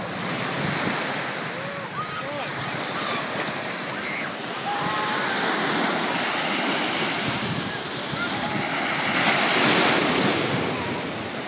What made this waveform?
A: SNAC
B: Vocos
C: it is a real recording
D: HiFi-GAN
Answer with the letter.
C